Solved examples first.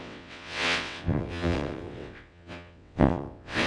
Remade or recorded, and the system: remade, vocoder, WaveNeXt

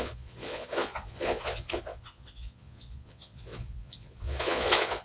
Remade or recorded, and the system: remade, vocoder, Vocos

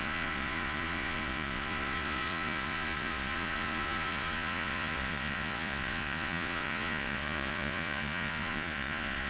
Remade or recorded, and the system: remade, vocoder, Vocos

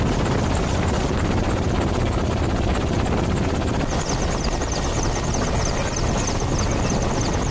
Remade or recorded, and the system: recorded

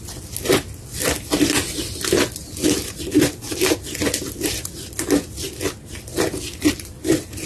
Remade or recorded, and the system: recorded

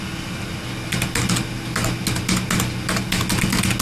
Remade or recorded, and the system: recorded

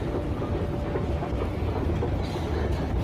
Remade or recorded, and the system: recorded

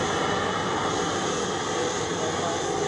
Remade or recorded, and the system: recorded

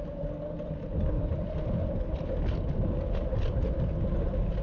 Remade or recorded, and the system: recorded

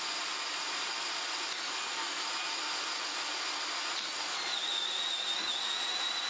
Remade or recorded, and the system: recorded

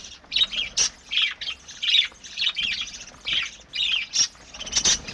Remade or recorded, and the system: recorded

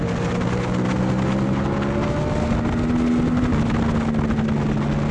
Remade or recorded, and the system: recorded